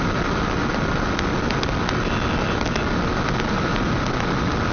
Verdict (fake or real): real